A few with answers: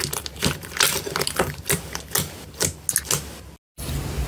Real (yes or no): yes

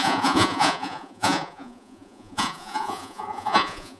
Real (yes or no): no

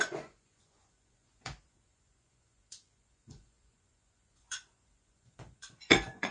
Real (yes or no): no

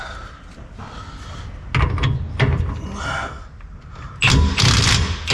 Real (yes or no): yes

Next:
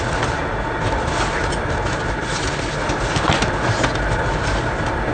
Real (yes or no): yes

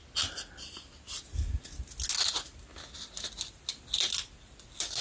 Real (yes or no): yes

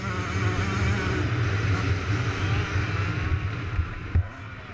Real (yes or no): yes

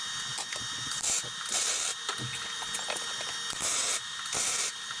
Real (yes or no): yes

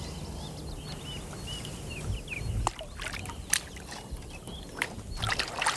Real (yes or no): yes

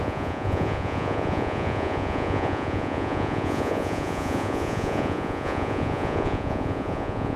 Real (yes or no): no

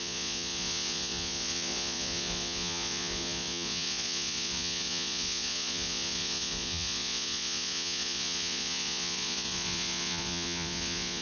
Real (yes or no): no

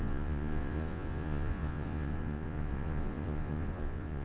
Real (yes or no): no